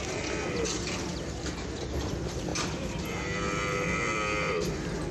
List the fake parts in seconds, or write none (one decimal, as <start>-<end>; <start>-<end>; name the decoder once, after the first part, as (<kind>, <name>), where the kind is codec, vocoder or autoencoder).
none